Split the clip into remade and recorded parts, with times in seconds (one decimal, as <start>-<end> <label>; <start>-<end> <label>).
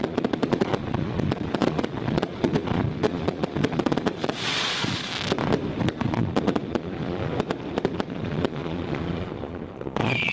0.0-5.1 remade; 5.1-5.8 recorded; 5.8-7.3 remade; 7.3-7.9 recorded; 7.9-10.3 remade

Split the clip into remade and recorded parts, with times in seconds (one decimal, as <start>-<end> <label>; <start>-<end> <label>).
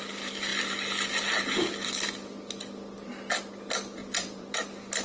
0.0-4.0 recorded; 4.0-4.6 remade; 4.6-5.0 recorded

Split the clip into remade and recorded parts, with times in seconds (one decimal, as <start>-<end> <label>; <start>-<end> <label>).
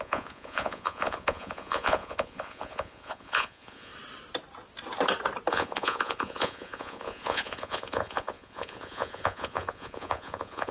0.0-3.9 remade; 3.9-5.5 recorded; 5.5-10.7 remade